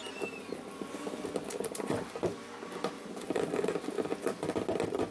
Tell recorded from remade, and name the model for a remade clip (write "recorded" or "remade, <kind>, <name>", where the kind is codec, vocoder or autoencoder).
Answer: recorded